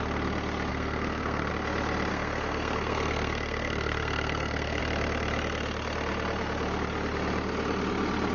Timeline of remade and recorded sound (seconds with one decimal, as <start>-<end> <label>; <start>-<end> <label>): 0.0-0.7 recorded; 0.7-1.5 remade; 1.5-2.1 recorded; 2.1-4.8 remade; 4.8-8.3 recorded